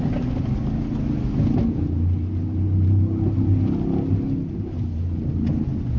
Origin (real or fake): real